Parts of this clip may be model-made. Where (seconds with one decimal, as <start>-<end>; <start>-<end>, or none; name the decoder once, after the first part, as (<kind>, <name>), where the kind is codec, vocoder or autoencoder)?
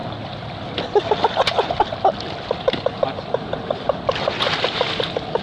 none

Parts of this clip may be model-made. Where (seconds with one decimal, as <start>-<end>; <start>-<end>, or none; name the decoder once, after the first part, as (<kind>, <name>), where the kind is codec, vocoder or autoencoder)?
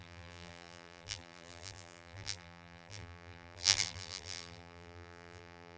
0.0-5.8 (vocoder, BigVGAN v2)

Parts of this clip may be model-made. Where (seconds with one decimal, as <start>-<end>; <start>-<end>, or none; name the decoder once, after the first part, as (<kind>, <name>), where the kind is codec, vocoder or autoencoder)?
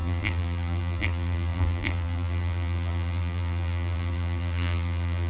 0.0-5.3 (vocoder, BigVGAN v2)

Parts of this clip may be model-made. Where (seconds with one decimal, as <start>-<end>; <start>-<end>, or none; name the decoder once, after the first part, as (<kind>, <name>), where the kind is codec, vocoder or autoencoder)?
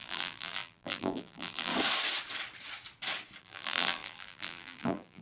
0.0-1.7 (vocoder, BigVGAN v2); 3.4-5.2